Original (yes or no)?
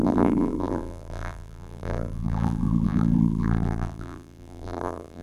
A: no